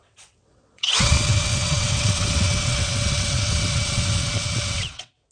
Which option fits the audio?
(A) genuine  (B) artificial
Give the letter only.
B